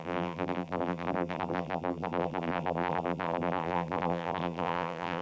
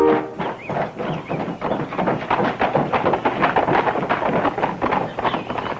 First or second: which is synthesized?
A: first